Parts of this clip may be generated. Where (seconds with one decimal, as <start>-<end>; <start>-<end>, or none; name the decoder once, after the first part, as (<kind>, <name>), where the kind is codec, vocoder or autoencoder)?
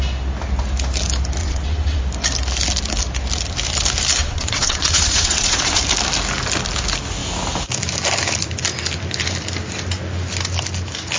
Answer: 1.4-2.0 (vocoder, WaveNeXt); 4.2-5.8